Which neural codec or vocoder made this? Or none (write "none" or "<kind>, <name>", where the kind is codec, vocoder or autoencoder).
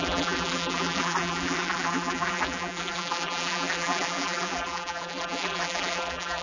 vocoder, BigVGAN v2